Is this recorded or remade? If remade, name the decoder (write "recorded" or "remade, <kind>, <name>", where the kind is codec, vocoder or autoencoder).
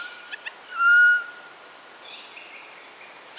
recorded